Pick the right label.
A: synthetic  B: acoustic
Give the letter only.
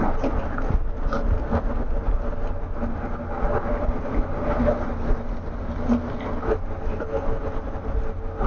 B